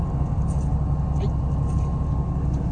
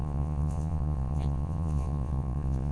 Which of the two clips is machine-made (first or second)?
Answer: second